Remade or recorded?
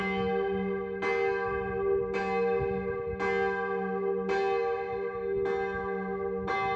recorded